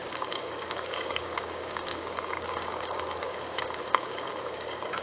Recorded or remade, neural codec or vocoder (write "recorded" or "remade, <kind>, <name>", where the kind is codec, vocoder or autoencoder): remade, codec, DAC